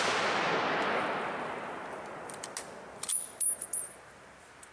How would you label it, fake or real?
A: real